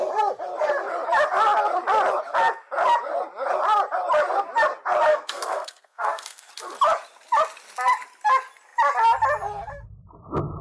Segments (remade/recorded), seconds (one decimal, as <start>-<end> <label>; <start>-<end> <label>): 0.0-5.1 recorded; 5.1-6.5 remade; 6.5-10.6 recorded